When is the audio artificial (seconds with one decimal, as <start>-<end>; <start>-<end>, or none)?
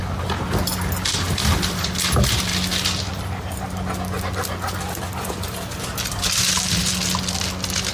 none